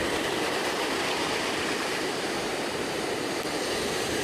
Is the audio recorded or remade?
remade